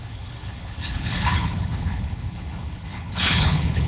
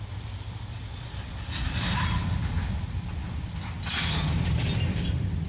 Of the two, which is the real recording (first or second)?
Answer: second